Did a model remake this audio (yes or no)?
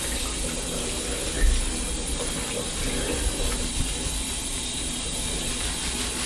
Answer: no